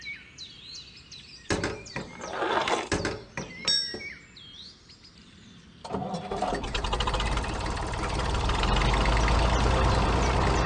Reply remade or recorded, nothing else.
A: recorded